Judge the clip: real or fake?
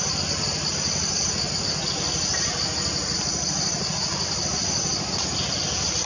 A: real